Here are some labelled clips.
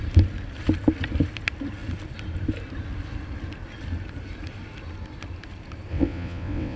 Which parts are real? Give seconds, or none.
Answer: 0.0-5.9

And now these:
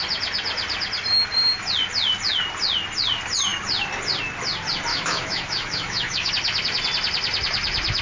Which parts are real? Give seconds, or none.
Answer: 0.0-4.9; 6.3-8.0